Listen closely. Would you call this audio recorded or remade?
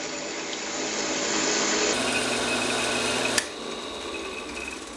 recorded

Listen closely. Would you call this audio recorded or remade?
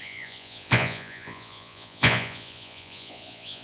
remade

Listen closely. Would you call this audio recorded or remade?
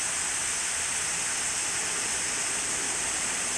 recorded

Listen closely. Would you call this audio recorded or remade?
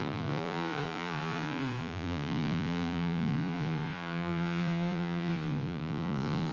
remade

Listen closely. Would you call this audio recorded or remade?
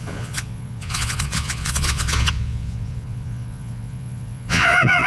remade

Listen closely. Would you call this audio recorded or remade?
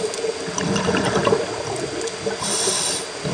recorded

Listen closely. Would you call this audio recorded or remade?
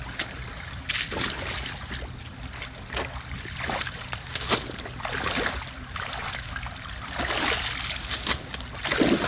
recorded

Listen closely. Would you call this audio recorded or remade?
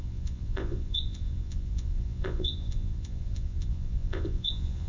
remade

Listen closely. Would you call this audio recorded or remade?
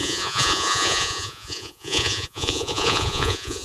remade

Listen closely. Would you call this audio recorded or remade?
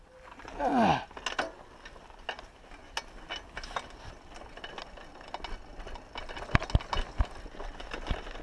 recorded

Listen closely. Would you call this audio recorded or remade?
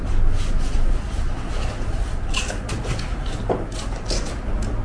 recorded